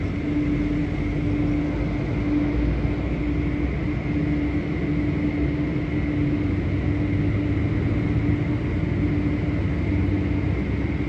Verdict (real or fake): real